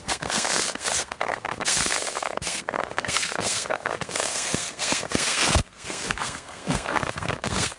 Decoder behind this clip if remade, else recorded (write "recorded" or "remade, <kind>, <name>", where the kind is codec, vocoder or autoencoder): remade, codec, SNAC